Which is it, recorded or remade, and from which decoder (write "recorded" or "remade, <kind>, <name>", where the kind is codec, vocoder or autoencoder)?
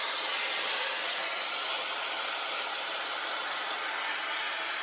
recorded